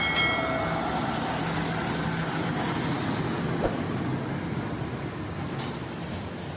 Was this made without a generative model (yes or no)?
yes